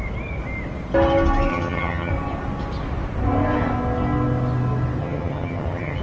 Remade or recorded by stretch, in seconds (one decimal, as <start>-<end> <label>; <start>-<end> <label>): 0.0-1.5 recorded; 1.5-2.1 remade; 2.1-5.0 recorded; 5.0-6.0 remade